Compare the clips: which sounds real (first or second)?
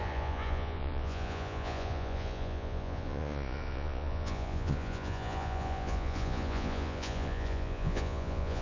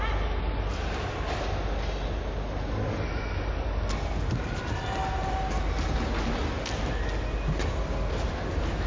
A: second